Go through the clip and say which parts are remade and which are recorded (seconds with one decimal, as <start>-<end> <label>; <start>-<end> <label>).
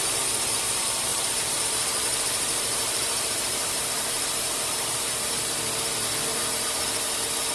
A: 0.0-1.1 recorded; 1.1-5.4 remade; 5.4-6.3 recorded; 6.3-6.8 remade; 6.8-7.5 recorded